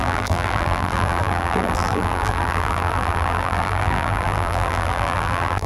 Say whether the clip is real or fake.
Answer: fake